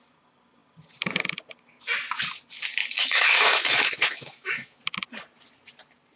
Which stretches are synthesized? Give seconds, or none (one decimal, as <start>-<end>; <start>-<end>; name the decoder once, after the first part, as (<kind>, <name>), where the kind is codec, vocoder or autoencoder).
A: 2.8-4.8 (autoencoder, DAC-VAE)